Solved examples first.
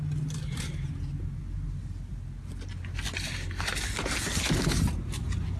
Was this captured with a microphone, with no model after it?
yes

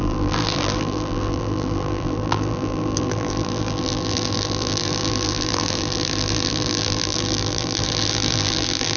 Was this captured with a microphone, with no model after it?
no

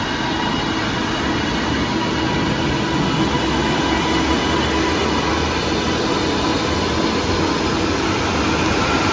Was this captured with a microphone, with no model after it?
yes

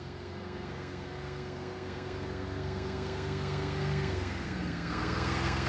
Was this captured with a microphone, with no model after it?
no